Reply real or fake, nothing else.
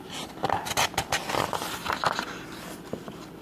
fake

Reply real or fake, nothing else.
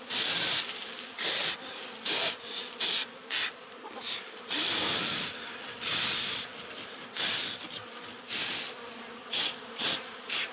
real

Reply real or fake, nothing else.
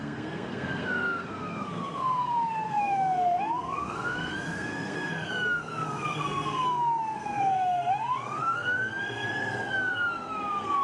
fake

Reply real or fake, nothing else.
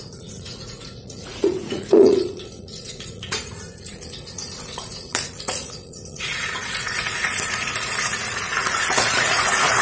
fake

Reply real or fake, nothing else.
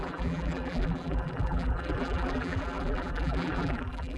fake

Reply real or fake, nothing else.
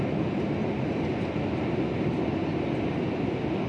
real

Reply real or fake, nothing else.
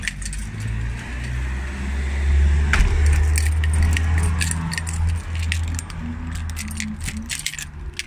real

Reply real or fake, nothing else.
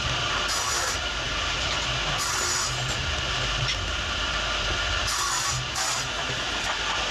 real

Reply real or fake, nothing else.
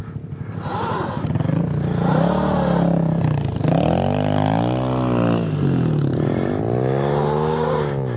real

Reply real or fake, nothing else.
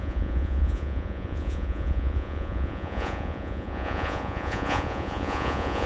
fake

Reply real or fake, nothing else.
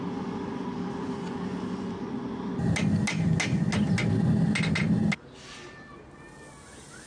real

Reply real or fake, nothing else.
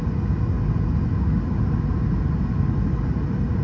real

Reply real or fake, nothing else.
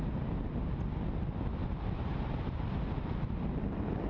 real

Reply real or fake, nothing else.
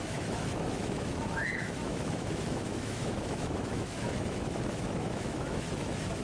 fake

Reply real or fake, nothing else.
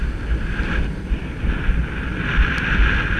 real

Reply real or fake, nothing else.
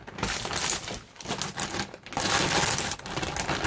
real